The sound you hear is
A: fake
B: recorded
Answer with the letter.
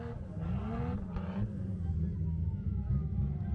B